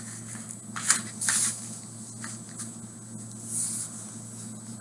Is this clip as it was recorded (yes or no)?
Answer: yes